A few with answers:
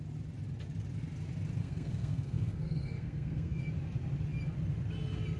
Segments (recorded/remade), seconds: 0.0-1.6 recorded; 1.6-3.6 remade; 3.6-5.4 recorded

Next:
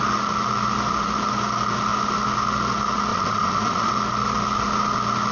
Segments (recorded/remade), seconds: 0.0-3.1 recorded; 3.1-3.9 remade; 3.9-5.3 recorded

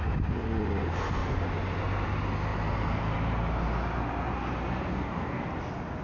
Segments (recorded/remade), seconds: 0.0-4.9 recorded; 4.9-5.4 remade; 5.4-6.0 recorded

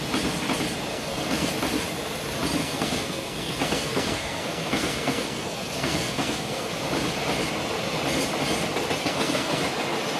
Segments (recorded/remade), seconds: 0.0-0.9 recorded; 0.9-1.5 remade; 1.5-2.6 recorded; 2.6-6.7 remade; 6.7-9.0 recorded; 9.0-9.6 remade; 9.6-10.2 recorded